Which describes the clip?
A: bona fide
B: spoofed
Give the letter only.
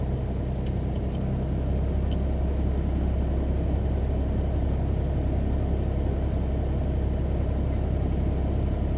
A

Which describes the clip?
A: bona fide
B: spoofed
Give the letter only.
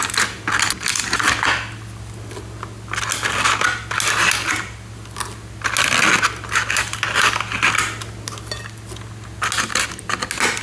A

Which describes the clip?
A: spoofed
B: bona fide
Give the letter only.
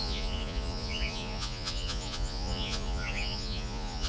A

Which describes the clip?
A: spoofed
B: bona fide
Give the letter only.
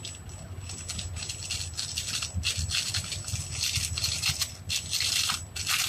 B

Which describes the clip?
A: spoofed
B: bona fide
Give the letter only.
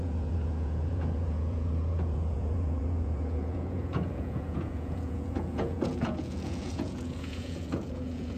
A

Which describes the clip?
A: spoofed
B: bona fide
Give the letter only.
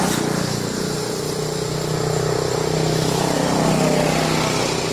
B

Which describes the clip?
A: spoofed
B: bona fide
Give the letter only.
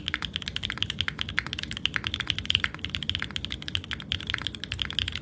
B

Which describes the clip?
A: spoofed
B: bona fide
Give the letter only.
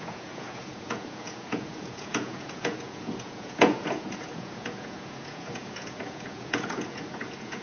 A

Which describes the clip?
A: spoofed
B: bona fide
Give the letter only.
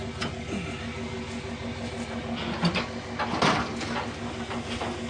B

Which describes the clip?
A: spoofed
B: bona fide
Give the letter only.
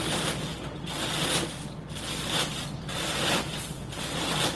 B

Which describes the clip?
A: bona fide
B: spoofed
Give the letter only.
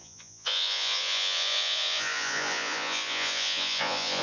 B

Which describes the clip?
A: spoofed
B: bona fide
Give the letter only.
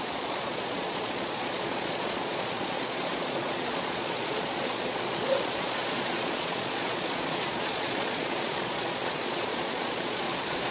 A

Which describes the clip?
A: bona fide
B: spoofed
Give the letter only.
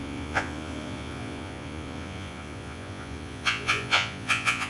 B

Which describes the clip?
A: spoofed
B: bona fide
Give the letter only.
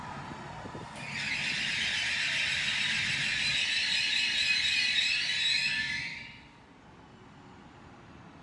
B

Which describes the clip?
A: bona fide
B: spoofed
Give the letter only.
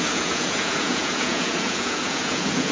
B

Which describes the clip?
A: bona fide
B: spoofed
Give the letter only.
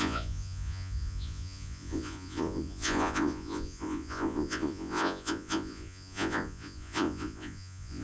B